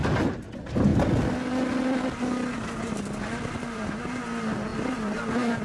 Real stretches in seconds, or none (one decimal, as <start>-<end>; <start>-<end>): 0.0-0.9; 4.2-4.7